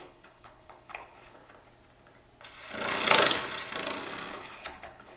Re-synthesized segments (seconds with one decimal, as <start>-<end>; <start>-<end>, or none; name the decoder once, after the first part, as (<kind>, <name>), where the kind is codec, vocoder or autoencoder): 0.0-1.4 (codec, HILCodec); 4.3-5.2